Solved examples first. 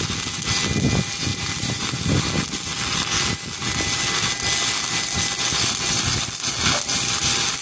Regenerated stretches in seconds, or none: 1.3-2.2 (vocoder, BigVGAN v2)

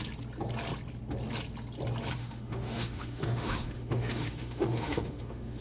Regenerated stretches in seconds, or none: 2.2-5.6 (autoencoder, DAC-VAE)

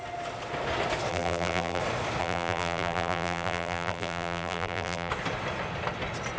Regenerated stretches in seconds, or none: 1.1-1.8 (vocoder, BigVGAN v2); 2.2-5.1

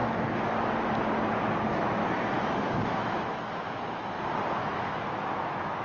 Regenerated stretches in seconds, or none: 0.0-0.7 (autoencoder, DAC-VAE); 1.7-3.8; 4.6-5.8

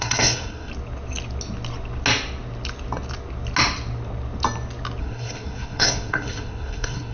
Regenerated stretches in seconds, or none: 0.0-0.7 (codec, SNAC); 5.0-7.1